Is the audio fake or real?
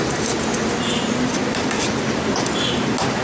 real